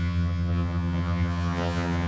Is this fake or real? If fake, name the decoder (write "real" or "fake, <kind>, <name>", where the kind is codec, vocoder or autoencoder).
fake, vocoder, HiFi-GAN